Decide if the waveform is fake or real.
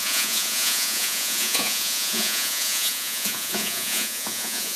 fake